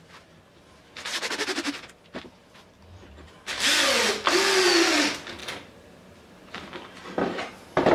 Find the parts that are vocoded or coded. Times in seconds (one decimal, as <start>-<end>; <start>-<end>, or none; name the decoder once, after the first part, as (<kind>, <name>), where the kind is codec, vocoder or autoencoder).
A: 7.0-7.9 (vocoder, BigVGAN v2)